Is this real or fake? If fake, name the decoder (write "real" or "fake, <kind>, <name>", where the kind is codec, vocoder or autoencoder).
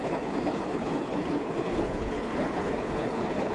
fake, codec, HILCodec